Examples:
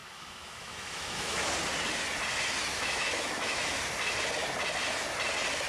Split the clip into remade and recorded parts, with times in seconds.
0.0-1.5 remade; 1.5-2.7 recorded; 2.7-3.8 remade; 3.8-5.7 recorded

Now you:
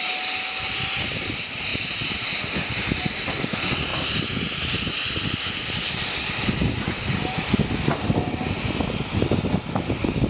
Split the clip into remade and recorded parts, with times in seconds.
0.0-10.3 recorded